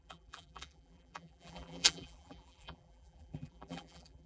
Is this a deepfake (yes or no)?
yes